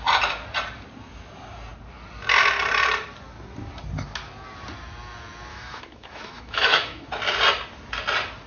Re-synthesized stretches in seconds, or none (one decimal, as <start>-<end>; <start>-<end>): 5.5-7.1